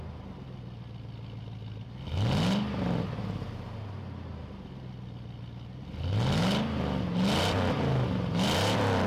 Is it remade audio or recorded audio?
recorded